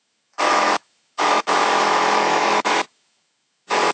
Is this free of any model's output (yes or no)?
no